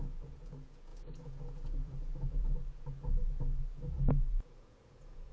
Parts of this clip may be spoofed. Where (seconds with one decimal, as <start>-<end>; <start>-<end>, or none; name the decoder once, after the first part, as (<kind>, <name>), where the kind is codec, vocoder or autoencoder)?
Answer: 0.0-5.3 (vocoder, Vocos)

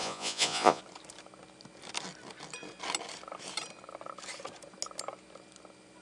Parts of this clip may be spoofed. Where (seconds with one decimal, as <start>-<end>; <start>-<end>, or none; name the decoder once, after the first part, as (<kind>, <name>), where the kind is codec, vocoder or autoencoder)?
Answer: 0.0-0.8 (vocoder, Vocos)

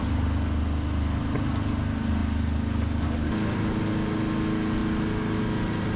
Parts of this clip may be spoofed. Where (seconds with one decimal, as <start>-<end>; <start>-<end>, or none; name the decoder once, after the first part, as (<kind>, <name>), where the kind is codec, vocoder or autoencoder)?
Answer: none

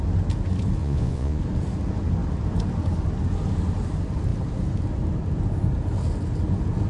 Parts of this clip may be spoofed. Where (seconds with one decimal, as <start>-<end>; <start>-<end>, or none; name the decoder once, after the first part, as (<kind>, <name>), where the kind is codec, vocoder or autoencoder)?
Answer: 0.8-1.4 (vocoder, Vocos)

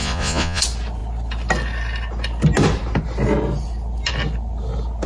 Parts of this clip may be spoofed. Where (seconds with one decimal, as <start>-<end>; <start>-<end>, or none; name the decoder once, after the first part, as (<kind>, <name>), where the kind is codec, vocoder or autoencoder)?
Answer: 0.0-0.6 (vocoder, Vocos)

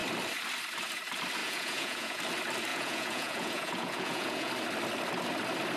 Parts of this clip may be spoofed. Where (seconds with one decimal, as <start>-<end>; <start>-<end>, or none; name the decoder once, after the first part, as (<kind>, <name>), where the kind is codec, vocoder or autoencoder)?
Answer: 1.4-2.2 (vocoder, Vocos); 2.7-4.5

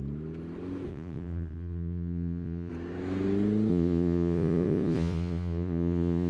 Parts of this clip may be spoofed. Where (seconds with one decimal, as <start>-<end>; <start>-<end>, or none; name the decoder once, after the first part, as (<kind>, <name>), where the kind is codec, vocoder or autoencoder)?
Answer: 0.9-2.7 (vocoder, Vocos); 3.7-6.3

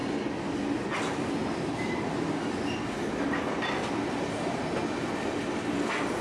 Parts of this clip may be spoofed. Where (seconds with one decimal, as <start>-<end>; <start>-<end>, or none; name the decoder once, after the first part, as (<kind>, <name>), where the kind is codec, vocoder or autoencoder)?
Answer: none